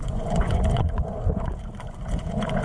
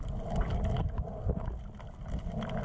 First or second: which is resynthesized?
first